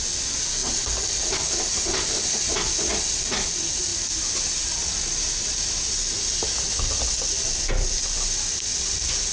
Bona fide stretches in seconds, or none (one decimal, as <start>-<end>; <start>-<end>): 0.0-9.3